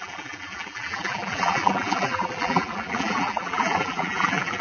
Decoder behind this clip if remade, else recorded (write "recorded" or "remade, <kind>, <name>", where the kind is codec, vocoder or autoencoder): remade, vocoder, BigVGAN v2